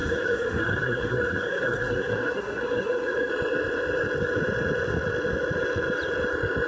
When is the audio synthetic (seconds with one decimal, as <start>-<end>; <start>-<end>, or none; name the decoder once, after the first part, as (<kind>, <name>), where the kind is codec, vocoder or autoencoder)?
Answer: 0.0-3.3 (codec, SNAC)